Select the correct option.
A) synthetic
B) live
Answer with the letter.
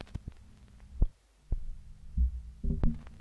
B